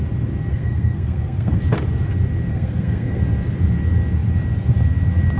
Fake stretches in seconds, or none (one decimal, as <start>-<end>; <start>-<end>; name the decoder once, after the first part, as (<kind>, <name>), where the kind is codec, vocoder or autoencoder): 0.5-1.6 (codec, SNAC); 2.5-3.2